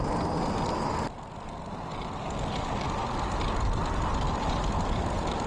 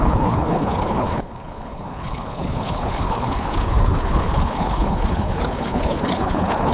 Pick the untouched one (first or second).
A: first